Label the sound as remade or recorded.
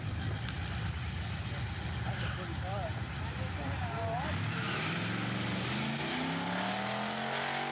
recorded